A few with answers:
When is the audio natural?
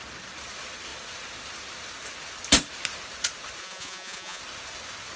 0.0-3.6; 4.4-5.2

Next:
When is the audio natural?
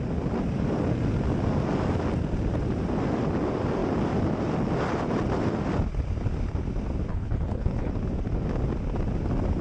0.0-7.1; 7.9-9.6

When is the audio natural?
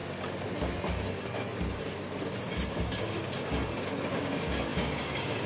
0.0-2.7; 3.6-4.1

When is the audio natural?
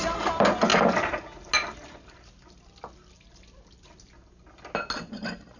0.0-5.6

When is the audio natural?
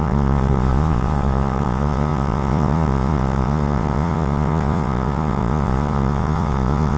none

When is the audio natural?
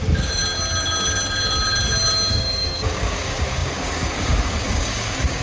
0.4-2.3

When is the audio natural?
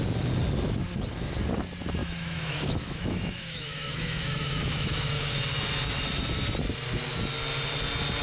0.0-2.0; 5.4-8.2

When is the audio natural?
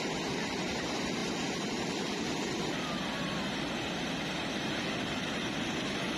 none